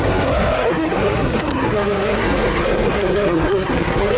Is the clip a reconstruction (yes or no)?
yes